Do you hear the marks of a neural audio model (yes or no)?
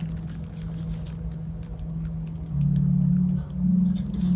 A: no